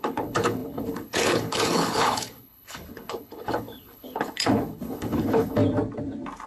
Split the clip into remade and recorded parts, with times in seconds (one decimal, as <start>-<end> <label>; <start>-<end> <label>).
0.0-5.6 remade; 5.6-6.5 recorded